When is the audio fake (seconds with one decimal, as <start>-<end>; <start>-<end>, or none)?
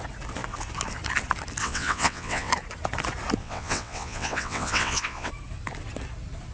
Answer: 1.6-2.5; 3.4-5.3